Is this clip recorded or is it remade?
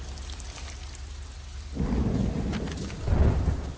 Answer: recorded